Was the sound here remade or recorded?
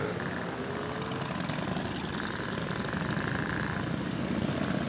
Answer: recorded